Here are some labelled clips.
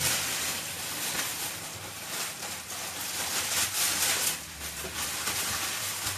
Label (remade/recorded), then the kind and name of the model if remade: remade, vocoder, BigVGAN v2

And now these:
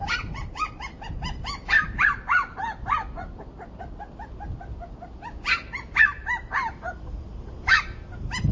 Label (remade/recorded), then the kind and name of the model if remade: recorded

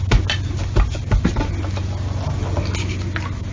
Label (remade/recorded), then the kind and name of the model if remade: recorded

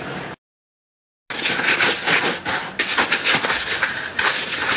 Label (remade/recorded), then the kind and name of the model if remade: recorded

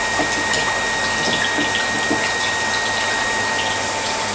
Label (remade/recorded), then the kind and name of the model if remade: recorded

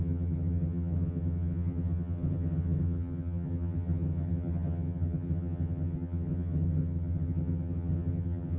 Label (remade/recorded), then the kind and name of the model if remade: remade, vocoder, HiFi-GAN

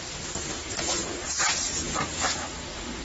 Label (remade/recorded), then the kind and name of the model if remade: recorded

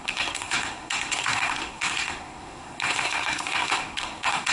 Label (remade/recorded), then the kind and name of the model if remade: remade, codec, SNAC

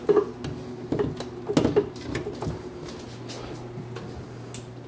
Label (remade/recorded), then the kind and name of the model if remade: recorded